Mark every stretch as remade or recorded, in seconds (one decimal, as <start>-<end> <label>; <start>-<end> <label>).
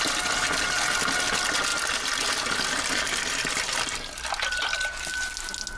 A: 0.0-5.8 recorded